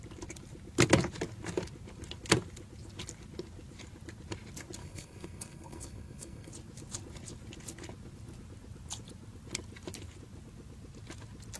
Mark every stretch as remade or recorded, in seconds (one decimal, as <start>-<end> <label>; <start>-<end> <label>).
0.0-4.8 recorded; 4.8-6.5 remade; 6.5-11.6 recorded